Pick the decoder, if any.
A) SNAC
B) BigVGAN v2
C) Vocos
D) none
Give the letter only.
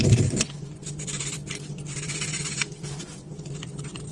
B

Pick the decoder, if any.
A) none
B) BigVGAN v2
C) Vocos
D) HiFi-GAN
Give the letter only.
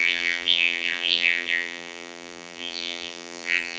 B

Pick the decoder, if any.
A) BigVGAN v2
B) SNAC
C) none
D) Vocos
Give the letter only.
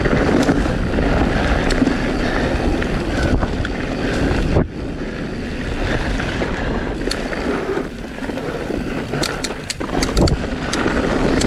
C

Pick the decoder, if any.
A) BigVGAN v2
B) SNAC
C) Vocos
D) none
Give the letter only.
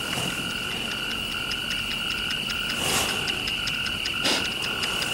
A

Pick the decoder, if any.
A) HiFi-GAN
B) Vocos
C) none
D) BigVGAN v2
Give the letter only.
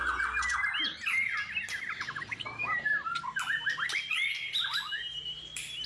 C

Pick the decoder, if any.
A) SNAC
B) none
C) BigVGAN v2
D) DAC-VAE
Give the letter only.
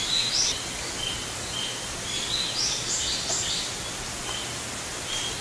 B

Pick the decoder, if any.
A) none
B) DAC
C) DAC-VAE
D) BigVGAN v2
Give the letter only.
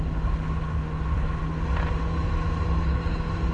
A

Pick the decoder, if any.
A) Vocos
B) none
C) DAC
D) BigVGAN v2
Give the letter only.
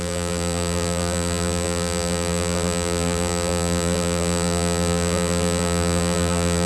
D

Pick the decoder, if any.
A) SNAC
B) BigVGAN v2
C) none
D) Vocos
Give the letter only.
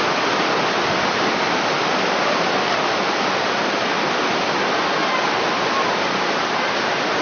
B